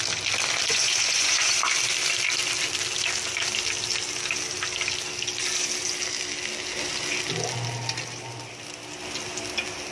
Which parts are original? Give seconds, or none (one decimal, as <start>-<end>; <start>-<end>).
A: 0.0-0.6; 1.6-9.9

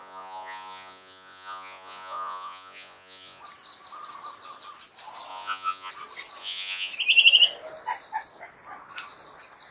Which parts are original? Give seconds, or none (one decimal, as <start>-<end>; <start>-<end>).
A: 3.4-5.3; 5.9-6.4; 6.9-9.7

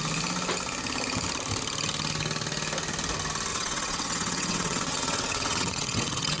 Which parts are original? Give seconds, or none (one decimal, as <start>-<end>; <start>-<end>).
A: 0.0-3.5

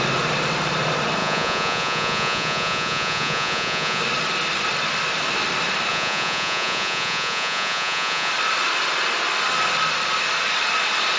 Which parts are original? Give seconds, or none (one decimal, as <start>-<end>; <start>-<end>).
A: 0.0-1.2; 4.0-5.9; 8.3-11.2

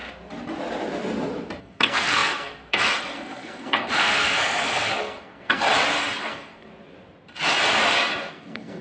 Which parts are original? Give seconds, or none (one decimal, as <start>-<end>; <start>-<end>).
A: 0.0-1.6; 5.6-6.2; 6.7-8.3

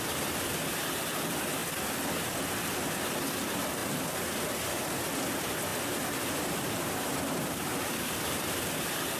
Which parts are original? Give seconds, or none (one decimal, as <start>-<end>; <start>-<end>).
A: 0.0-5.7; 8.5-9.2

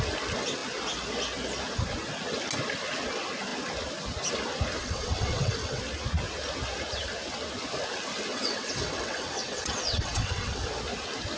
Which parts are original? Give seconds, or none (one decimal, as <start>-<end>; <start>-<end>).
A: 0.0-4.8; 5.8-8.3; 10.6-11.4

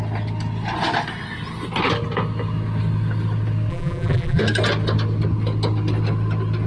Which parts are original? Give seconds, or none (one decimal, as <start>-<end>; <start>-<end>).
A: 0.0-3.7; 4.4-6.7